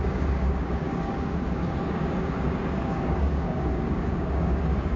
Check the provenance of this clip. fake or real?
fake